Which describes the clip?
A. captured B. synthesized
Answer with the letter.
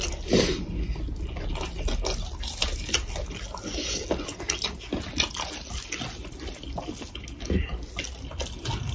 A